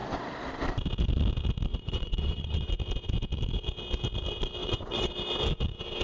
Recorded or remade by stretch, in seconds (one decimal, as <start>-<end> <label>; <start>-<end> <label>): 0.0-1.7 recorded; 1.7-2.8 remade; 2.8-4.6 recorded; 4.6-5.1 remade; 5.1-6.0 recorded